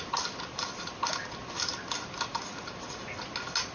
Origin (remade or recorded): recorded